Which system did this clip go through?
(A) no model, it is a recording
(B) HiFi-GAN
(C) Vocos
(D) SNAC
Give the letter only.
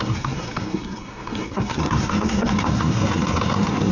D